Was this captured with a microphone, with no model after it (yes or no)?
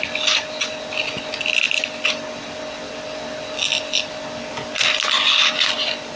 yes